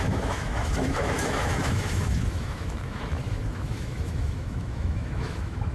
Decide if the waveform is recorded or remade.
remade